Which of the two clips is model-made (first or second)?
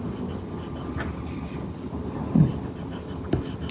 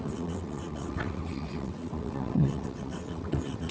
second